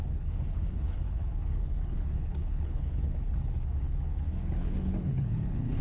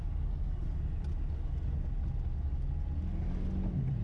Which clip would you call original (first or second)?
second